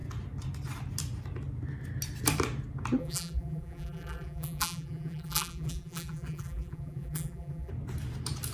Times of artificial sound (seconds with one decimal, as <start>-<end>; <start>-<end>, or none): 3.0-7.7